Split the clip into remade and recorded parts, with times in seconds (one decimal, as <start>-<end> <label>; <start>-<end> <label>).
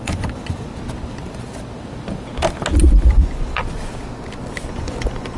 0.0-0.7 remade; 0.7-3.1 recorded; 3.1-3.6 remade; 3.6-4.7 recorded; 4.7-5.4 remade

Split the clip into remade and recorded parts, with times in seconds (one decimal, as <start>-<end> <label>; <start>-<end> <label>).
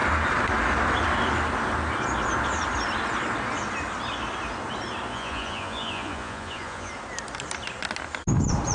0.0-5.1 recorded; 5.1-6.9 remade; 6.9-8.7 recorded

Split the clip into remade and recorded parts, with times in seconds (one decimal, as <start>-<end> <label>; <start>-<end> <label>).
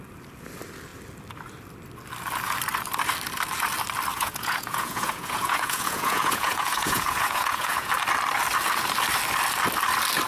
0.0-4.1 recorded; 4.1-7.9 remade; 7.9-10.3 recorded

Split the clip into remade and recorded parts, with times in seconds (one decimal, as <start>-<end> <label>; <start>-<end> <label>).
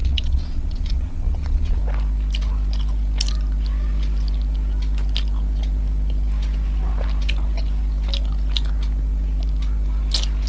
0.0-1.8 remade; 1.8-10.5 recorded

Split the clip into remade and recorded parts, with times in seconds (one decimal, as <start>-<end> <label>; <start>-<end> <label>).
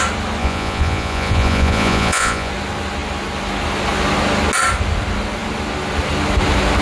0.0-0.4 recorded; 0.4-2.5 remade; 2.5-6.8 recorded